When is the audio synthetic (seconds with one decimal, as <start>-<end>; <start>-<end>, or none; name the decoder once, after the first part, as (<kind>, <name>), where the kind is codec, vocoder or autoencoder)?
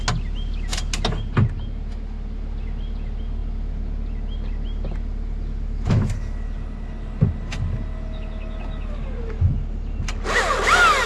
none